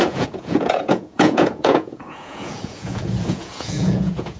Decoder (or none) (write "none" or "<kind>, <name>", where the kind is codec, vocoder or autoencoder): vocoder, Vocos